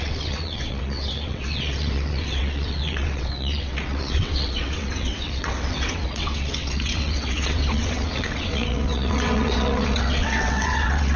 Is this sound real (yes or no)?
no